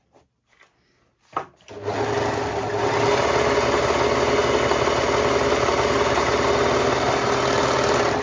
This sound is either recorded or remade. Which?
recorded